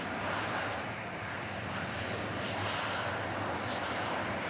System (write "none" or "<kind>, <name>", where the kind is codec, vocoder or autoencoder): none